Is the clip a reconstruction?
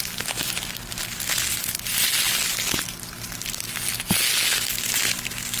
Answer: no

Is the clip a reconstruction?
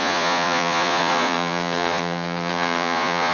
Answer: yes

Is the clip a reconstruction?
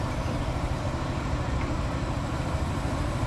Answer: yes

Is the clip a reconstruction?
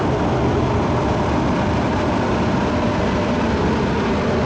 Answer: no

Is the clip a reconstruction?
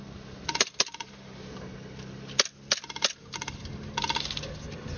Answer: no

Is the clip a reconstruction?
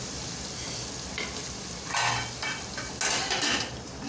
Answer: no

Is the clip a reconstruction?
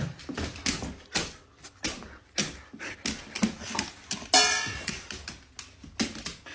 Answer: no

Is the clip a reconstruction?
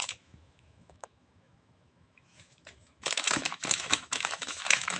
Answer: yes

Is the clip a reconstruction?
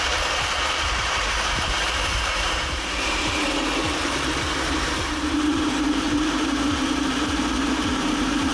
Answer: yes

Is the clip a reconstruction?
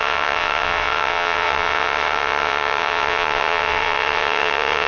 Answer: yes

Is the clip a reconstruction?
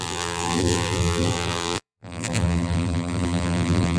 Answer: yes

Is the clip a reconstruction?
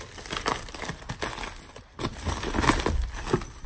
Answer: no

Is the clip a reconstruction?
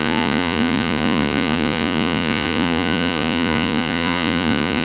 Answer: yes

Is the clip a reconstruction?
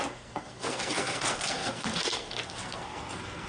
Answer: yes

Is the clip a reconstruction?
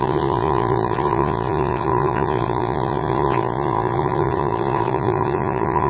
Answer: yes